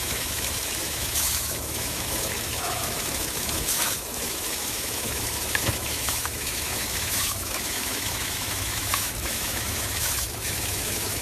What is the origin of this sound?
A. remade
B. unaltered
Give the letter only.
A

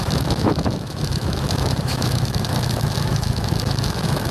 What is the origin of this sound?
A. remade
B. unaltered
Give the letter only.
A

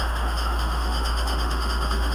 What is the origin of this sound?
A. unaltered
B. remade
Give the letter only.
B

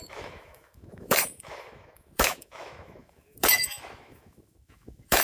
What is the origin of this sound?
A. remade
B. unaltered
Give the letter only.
A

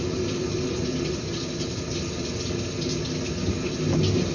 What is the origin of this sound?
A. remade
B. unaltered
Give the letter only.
B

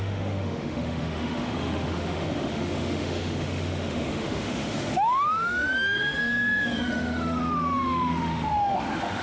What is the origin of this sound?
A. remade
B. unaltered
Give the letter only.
A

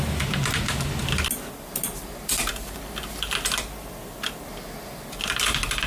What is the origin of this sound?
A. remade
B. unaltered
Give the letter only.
B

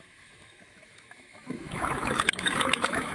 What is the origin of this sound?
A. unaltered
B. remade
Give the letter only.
B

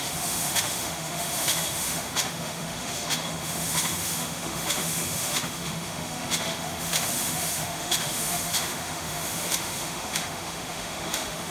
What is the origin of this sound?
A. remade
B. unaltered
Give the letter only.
A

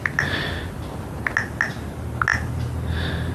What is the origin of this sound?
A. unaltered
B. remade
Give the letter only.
A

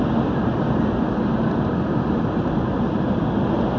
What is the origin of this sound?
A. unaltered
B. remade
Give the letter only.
A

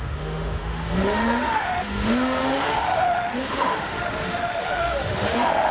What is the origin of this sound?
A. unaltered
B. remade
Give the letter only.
B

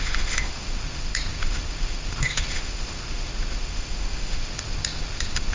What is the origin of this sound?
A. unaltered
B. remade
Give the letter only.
B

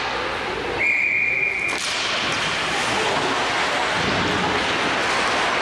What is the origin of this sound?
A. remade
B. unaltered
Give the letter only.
B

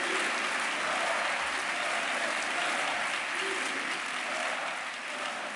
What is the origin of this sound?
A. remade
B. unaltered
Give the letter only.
B